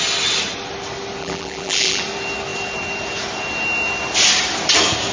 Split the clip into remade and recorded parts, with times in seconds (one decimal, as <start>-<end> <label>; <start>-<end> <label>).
0.0-1.2 recorded; 1.2-2.0 remade; 2.0-5.1 recorded